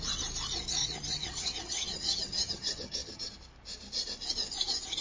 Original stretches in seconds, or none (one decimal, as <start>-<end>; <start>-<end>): 0.0-0.8; 3.3-5.0